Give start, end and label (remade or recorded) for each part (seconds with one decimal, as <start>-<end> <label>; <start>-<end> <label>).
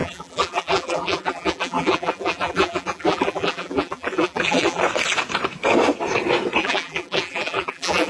0.0-4.8 remade; 4.8-6.6 recorded; 6.6-8.1 remade